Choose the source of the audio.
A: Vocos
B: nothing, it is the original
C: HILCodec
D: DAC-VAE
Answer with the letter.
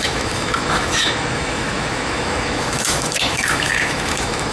D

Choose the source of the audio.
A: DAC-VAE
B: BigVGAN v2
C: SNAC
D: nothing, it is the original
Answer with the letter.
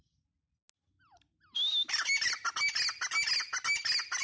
D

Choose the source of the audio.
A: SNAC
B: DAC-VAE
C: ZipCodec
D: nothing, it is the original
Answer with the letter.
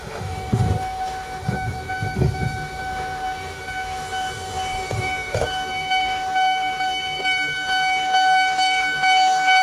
B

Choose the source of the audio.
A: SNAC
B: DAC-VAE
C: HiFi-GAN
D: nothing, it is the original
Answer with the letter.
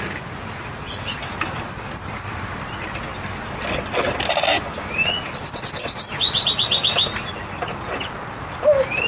D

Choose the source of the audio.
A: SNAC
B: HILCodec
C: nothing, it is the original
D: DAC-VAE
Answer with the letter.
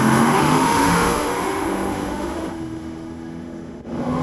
D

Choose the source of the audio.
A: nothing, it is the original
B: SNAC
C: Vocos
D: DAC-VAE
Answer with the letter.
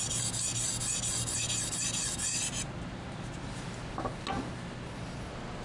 A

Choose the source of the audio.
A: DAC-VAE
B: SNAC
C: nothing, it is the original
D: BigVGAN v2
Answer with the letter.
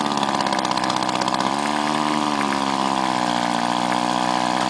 C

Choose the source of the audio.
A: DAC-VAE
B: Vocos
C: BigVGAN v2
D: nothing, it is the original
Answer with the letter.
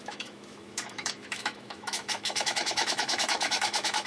A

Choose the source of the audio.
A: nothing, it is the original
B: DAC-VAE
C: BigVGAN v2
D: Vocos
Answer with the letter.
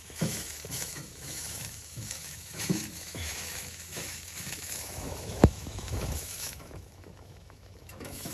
B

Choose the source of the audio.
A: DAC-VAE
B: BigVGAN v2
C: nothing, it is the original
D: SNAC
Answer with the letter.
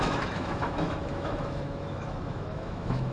A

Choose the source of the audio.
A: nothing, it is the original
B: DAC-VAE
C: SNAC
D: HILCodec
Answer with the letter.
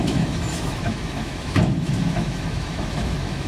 B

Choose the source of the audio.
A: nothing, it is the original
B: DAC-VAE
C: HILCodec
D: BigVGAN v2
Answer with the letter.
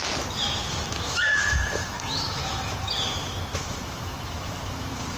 B